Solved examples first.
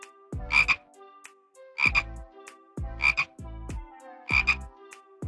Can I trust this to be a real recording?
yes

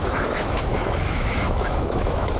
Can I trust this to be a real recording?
no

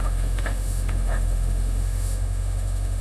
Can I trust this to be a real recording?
no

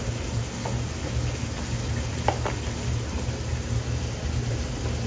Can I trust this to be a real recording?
yes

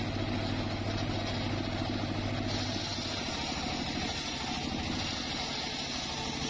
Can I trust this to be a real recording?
yes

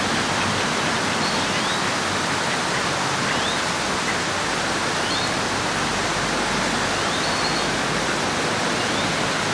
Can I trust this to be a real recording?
yes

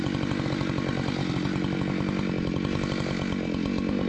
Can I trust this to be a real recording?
yes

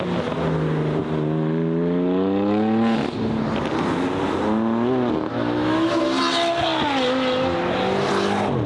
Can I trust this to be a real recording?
yes